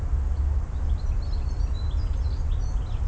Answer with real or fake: real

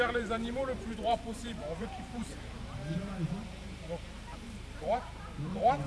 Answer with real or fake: fake